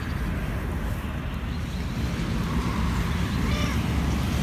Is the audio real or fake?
real